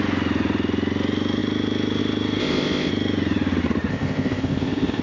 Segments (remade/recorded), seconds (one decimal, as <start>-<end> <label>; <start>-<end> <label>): 0.0-2.4 recorded; 2.4-2.9 remade; 2.9-3.9 recorded; 3.9-5.0 remade